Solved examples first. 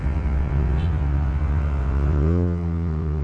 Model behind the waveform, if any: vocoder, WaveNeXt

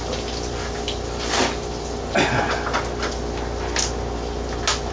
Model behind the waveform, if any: none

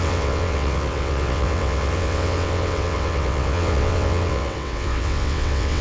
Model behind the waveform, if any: vocoder, WaveNeXt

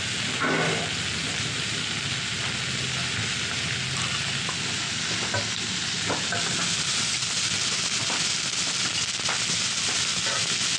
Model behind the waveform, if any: none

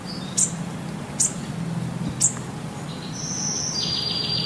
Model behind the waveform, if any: none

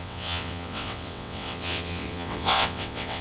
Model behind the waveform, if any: vocoder, WaveNeXt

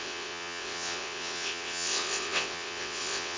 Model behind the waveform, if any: vocoder, WaveNeXt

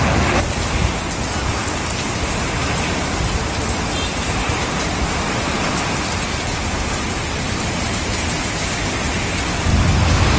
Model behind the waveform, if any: none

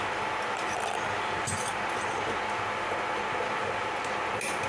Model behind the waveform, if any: none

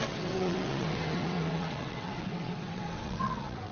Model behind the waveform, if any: vocoder, WaveNeXt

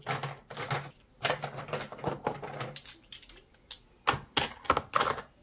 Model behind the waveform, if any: none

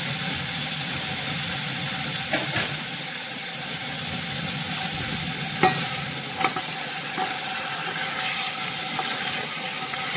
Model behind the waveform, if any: none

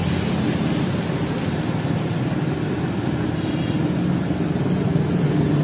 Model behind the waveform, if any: none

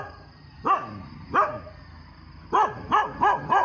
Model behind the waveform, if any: none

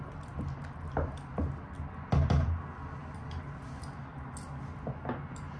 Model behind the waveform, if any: none